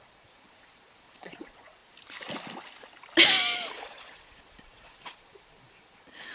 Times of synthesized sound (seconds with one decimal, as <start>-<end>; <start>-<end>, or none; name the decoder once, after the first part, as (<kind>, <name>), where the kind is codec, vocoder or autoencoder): 0.0-1.8 (vocoder, Vocos); 3.7-6.3